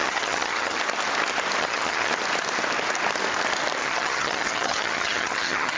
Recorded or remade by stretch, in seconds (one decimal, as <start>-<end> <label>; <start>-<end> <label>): 0.0-0.8 remade; 0.8-1.6 recorded; 1.6-2.1 remade; 2.1-3.8 recorded; 3.8-5.8 remade